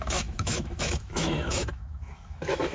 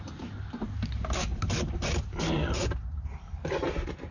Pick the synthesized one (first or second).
first